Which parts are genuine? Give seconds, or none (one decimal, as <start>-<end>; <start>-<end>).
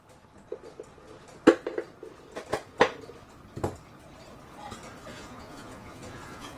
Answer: 0.0-5.1